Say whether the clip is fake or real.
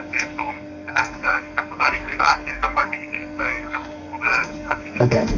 fake